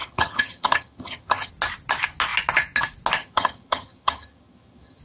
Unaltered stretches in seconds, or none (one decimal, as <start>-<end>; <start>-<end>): 1.5-3.2